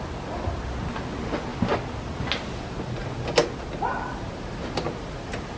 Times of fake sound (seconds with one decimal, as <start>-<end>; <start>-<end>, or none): none